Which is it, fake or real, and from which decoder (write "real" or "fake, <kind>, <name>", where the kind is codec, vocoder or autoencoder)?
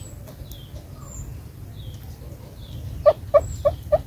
real